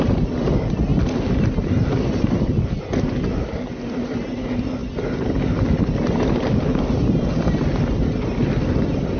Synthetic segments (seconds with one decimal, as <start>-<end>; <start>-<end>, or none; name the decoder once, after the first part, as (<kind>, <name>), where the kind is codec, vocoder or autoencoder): none